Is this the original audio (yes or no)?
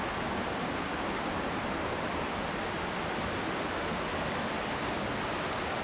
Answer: yes